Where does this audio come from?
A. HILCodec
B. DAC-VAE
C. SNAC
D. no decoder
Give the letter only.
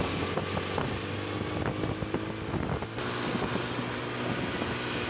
D